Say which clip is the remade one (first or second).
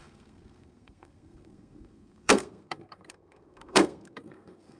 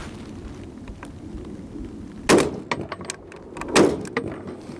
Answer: first